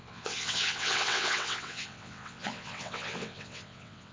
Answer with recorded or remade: remade